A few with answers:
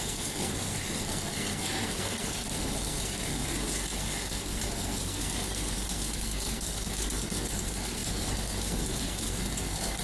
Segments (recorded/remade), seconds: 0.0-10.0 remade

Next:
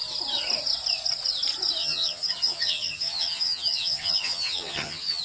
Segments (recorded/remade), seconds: 0.0-1.8 recorded; 1.8-5.2 remade

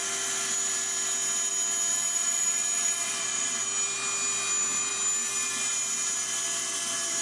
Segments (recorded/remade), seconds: 0.0-1.9 recorded; 1.9-3.6 remade; 3.6-7.2 recorded

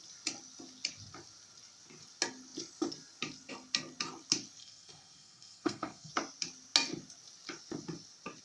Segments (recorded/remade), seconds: 0.0-4.6 recorded; 4.6-6.1 remade; 6.1-8.4 recorded

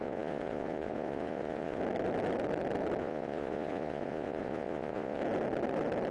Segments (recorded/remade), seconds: 0.0-1.8 remade; 1.8-3.0 recorded; 3.0-5.2 remade; 5.2-6.1 recorded

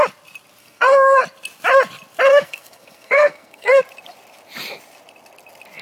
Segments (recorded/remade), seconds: 0.0-0.6 recorded; 0.6-1.2 remade; 1.2-2.3 recorded; 2.3-3.8 remade; 3.8-5.8 recorded

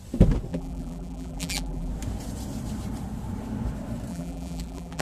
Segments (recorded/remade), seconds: 0.0-0.5 recorded; 0.5-1.9 remade; 1.9-4.1 recorded; 4.1-5.0 remade

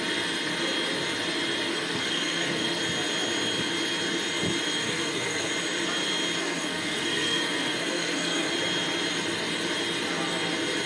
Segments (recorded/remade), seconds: 0.0-1.7 recorded; 1.7-2.8 remade; 2.8-4.8 recorded; 4.8-5.5 remade; 5.5-6.4 recorded; 6.4-8.5 remade; 8.5-10.9 recorded